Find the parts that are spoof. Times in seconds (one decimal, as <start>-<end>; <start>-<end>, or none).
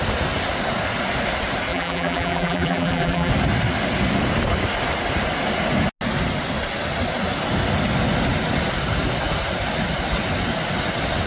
1.7-3.3